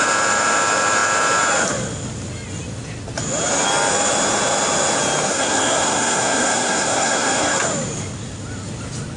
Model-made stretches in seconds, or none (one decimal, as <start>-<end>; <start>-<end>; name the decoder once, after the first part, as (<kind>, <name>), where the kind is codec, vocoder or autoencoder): 5.3-7.6 (codec, SNAC)